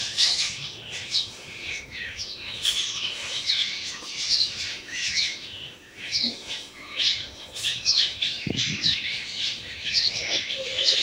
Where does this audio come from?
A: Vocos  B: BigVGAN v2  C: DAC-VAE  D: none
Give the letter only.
C